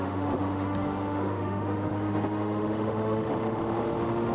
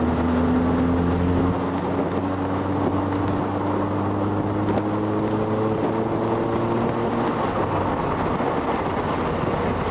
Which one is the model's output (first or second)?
first